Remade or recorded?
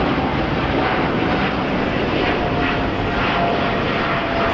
recorded